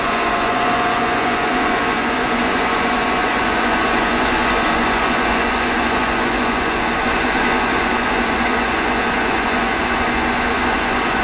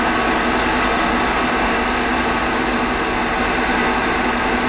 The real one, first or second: second